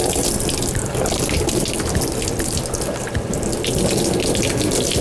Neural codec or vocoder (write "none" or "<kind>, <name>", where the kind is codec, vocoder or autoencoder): none